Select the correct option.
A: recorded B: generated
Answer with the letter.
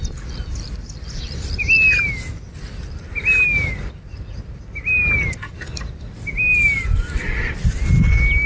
A